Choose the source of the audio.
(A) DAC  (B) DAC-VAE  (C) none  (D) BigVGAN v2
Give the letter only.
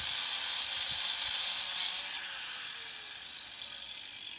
C